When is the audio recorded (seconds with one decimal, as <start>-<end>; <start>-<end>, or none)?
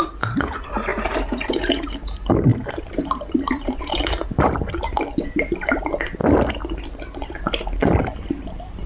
0.0-2.5; 5.8-8.9